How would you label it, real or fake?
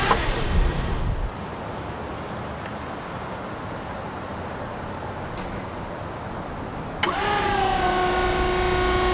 real